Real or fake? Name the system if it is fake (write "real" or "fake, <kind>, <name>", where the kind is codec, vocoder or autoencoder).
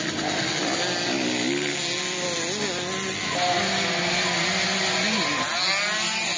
real